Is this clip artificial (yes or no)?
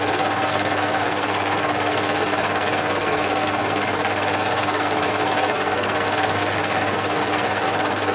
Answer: yes